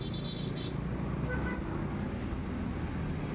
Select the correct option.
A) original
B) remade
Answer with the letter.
A